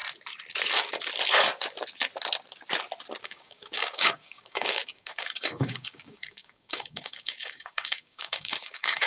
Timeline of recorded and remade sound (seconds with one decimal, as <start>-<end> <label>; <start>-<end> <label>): 0.0-3.2 recorded; 3.2-9.1 remade